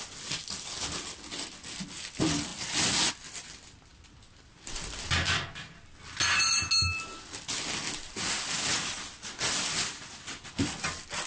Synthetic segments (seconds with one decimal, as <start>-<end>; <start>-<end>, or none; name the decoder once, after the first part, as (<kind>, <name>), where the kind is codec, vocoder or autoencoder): none